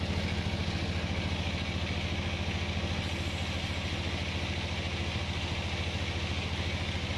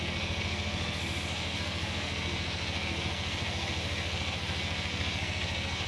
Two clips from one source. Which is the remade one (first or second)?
second